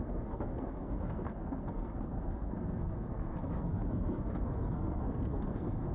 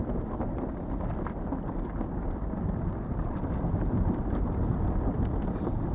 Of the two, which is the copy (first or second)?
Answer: first